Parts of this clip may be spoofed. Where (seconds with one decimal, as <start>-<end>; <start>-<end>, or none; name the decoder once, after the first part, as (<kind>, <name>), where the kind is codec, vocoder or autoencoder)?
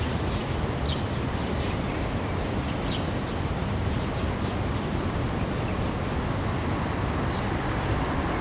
none